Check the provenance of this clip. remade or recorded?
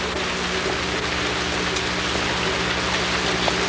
recorded